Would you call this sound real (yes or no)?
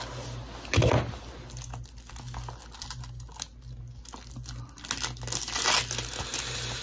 yes